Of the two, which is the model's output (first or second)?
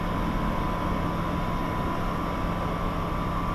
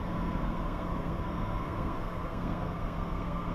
second